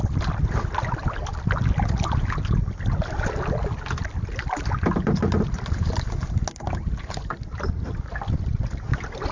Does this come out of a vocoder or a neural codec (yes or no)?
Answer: no